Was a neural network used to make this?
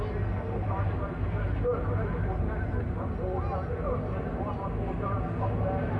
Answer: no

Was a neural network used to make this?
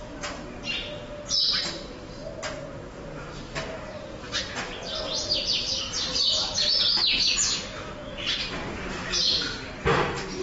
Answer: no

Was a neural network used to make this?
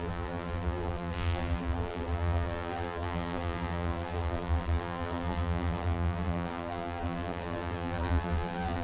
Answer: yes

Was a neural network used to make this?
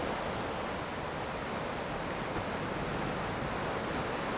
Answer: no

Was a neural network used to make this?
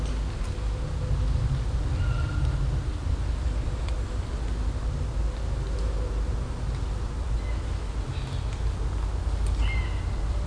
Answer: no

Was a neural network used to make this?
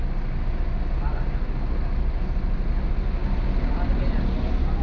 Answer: no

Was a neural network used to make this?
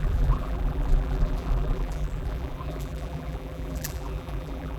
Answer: yes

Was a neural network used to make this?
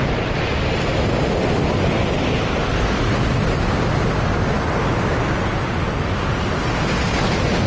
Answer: no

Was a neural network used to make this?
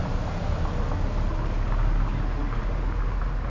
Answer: no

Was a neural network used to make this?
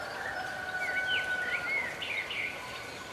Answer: no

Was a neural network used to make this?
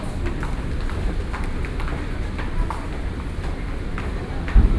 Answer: no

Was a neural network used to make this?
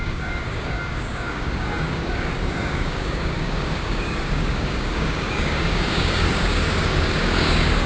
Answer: yes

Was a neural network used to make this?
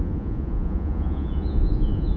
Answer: yes